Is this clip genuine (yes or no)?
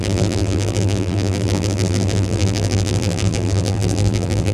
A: no